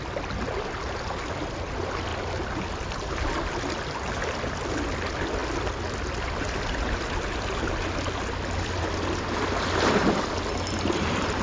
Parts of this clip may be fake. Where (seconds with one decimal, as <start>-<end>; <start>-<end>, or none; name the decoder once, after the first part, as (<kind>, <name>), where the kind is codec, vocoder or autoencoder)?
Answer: none